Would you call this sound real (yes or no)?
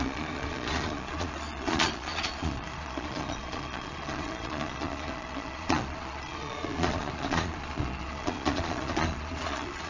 no